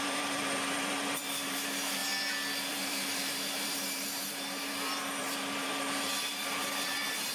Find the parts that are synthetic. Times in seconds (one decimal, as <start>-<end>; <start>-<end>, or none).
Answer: 0.0-2.0; 2.7-7.3